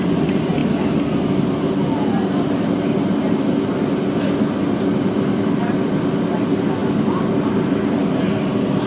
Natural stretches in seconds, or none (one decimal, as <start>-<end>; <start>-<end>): 0.0-8.9